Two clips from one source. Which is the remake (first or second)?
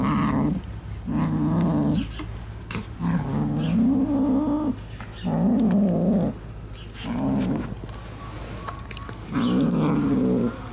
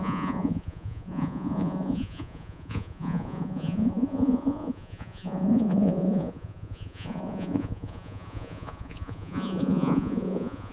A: second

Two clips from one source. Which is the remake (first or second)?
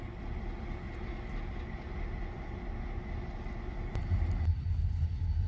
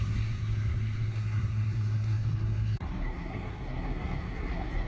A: second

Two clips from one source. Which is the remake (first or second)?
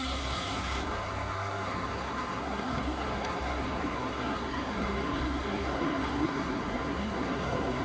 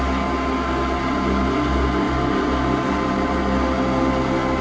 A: first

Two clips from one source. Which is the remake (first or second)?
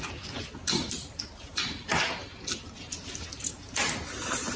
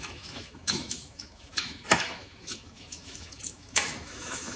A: second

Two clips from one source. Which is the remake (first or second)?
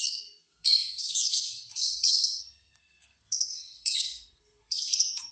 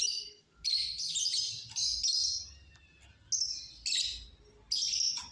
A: first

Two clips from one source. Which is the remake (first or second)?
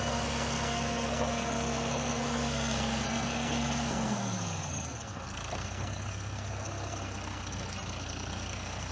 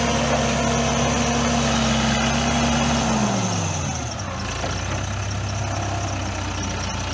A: first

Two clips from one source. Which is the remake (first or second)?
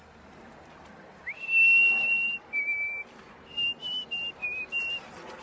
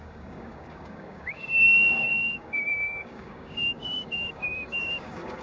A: second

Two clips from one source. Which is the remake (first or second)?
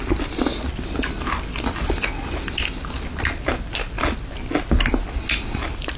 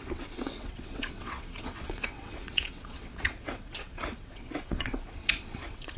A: second